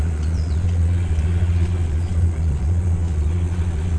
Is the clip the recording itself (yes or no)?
no